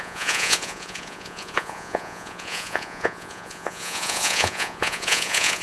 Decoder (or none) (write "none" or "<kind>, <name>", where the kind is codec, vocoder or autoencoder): vocoder, Vocos